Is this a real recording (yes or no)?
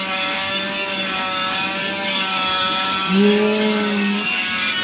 no